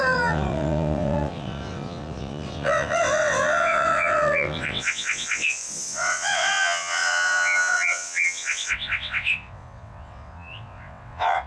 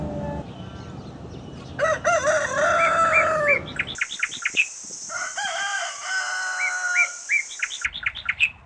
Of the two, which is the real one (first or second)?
second